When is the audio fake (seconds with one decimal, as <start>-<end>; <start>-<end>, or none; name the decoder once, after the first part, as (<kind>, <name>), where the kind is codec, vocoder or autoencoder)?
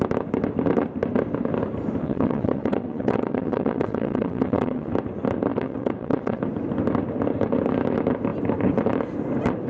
2.0-4.9 (vocoder, WaveNeXt); 5.5-6.4